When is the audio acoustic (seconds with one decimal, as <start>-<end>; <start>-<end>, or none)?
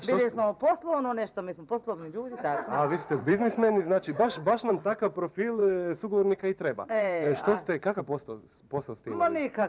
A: 0.0-3.0; 4.7-5.6; 8.0-9.7